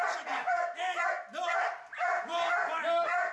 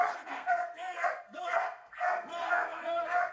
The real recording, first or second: first